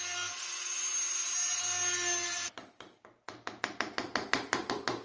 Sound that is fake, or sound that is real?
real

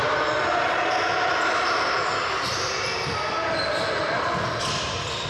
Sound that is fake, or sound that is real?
real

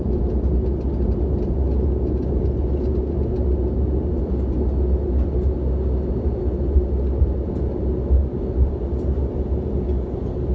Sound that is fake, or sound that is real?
real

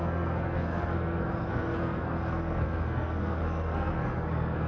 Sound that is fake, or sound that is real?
fake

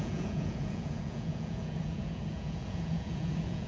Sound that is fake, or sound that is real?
fake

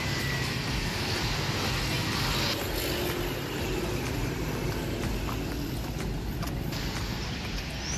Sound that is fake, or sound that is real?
real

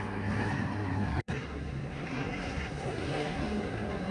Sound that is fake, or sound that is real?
fake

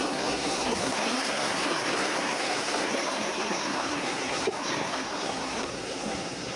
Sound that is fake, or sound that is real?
fake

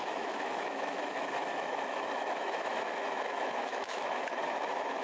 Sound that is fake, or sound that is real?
fake